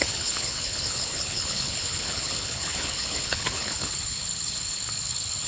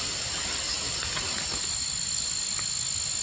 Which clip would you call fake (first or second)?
first